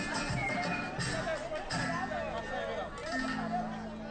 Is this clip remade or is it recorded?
recorded